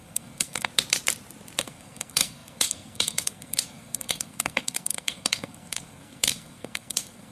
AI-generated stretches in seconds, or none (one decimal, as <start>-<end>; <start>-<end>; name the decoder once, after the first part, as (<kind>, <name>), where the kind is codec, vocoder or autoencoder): 0.0-0.7 (codec, SNAC); 1.6-7.3